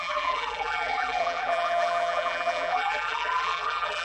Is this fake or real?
fake